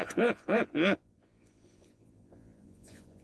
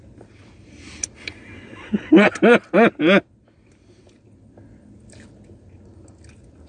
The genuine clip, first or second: second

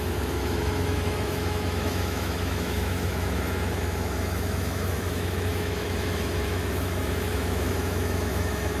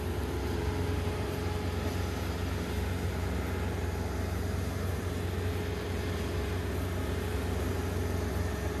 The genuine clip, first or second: second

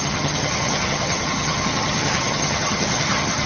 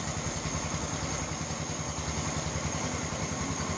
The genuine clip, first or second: second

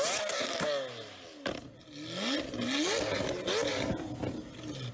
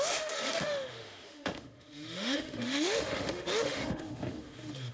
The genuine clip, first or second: first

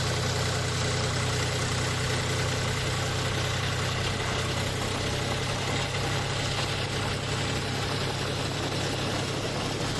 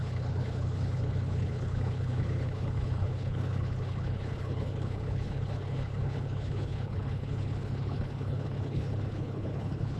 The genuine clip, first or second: first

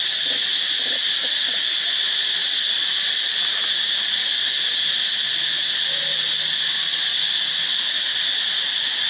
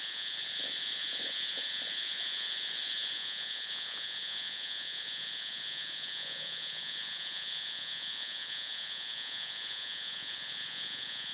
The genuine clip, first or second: first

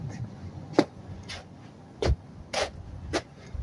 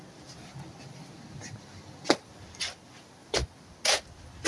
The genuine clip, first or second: second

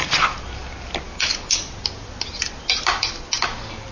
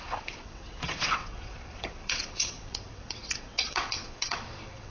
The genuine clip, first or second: first